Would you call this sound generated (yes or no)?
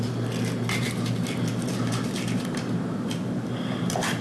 no